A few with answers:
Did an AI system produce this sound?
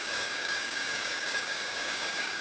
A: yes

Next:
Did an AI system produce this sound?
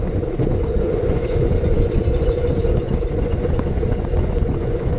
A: yes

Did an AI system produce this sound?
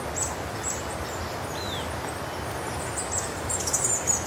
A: no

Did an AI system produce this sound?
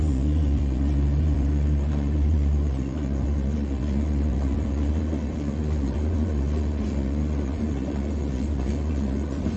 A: yes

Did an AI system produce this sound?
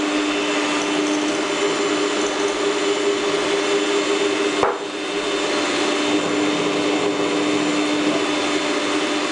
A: no